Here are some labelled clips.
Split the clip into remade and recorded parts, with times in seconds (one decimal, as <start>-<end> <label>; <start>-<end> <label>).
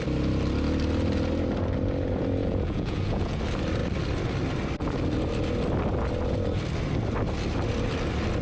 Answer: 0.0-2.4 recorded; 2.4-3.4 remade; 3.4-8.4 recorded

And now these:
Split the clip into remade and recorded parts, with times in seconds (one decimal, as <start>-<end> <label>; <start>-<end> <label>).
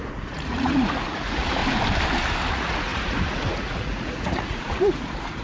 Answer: 0.0-1.6 remade; 1.6-2.5 recorded; 2.5-5.4 remade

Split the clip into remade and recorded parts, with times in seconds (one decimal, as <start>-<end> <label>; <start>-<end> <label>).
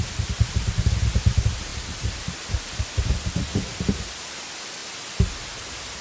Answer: 0.0-1.7 recorded; 1.7-2.2 remade; 2.2-6.0 recorded